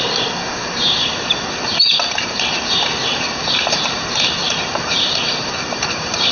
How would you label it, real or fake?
fake